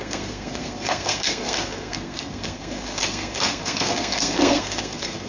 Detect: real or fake fake